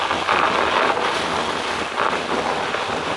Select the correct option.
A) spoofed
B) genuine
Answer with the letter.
B